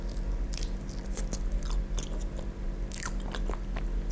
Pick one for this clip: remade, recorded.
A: recorded